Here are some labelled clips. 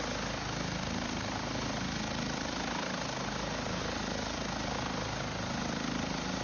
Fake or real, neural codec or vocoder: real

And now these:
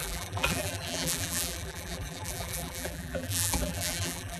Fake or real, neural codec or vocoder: fake, vocoder, BigVGAN v2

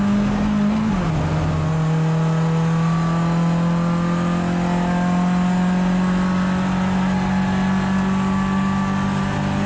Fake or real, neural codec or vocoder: real